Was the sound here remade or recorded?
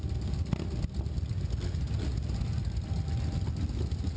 recorded